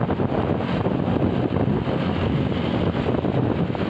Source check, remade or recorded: recorded